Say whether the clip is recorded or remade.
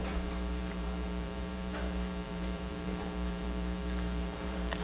remade